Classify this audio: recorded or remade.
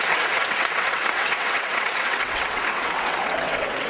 remade